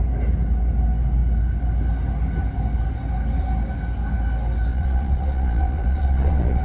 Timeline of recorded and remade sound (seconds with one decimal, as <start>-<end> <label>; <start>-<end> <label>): 0.0-4.7 recorded; 4.7-6.6 remade